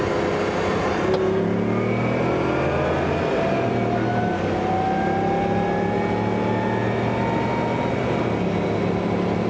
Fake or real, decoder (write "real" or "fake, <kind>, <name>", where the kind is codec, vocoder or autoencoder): real